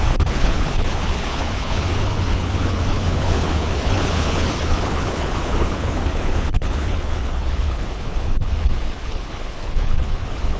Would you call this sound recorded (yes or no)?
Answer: no